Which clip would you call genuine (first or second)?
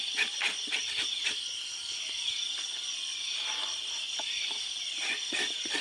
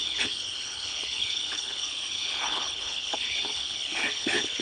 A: first